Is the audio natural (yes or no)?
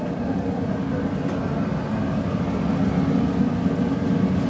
yes